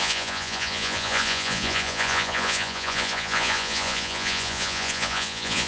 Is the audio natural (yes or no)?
no